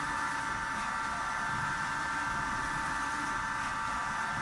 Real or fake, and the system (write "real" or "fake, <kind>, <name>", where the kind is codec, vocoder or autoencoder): real